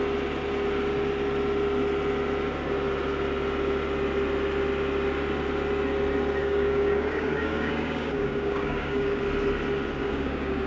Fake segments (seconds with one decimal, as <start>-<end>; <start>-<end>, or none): 6.4-9.2; 10.0-10.7